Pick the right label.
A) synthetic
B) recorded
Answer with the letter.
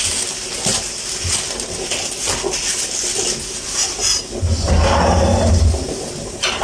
B